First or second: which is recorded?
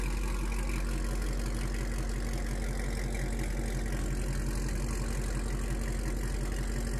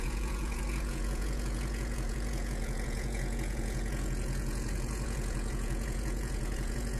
first